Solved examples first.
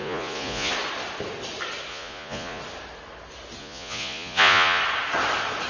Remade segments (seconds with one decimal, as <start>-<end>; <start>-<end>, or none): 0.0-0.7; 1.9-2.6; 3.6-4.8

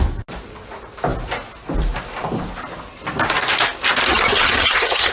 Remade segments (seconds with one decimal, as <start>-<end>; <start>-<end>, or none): 4.1-5.1

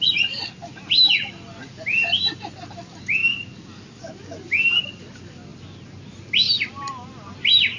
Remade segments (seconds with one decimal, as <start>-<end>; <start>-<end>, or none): none

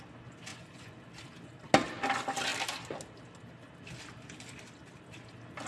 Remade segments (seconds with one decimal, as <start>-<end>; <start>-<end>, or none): 0.5-1.0

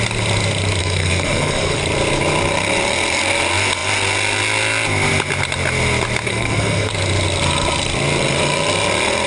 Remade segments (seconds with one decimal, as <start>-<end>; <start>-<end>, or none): 0.8-1.8; 6.3-6.9

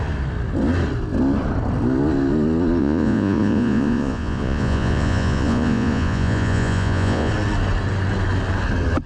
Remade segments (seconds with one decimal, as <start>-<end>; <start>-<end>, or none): 2.8-7.3

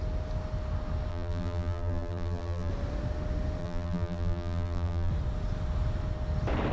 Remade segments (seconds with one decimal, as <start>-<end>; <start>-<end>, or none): 1.1-2.7; 3.6-5.1